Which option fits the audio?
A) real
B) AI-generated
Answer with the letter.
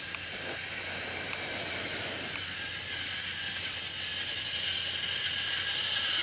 A